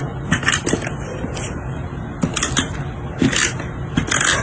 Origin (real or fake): real